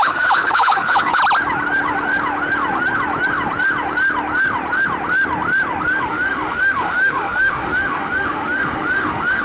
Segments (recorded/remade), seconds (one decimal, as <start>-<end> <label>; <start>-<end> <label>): 0.0-1.2 remade; 1.2-6.0 recorded; 6.0-9.4 remade